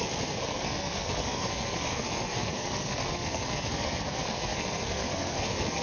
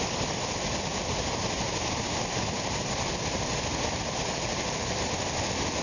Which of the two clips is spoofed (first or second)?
first